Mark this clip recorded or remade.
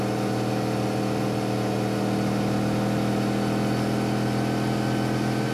recorded